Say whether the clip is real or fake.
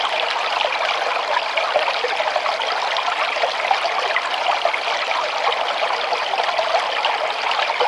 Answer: real